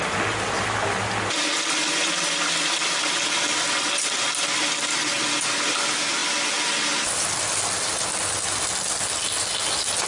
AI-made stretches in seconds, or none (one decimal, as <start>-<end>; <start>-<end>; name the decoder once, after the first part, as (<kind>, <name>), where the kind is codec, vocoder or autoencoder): none